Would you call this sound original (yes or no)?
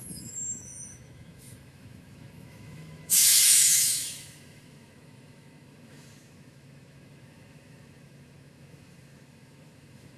no